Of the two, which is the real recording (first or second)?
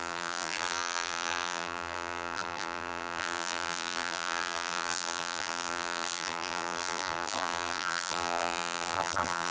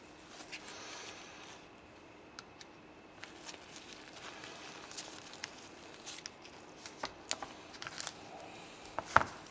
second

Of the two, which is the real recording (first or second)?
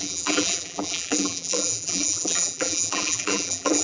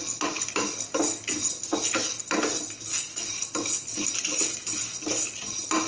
second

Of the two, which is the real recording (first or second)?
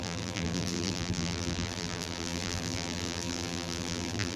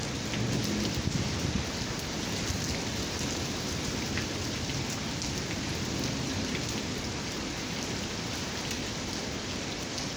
second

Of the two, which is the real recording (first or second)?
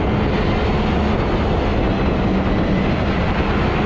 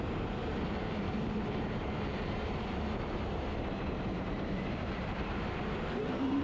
first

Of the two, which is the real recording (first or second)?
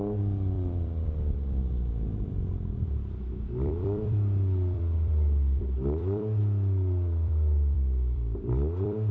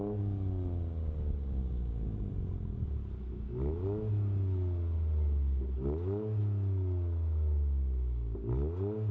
second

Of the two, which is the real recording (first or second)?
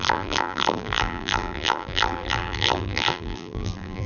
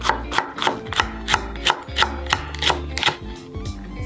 second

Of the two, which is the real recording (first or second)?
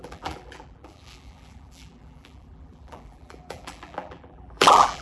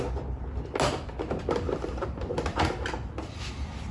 second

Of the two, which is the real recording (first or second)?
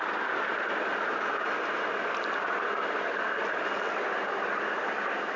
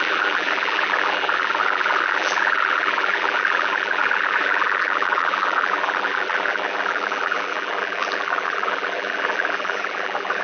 first